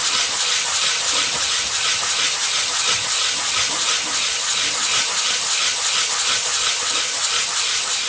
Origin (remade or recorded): recorded